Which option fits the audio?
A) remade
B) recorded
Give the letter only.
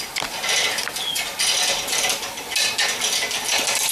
B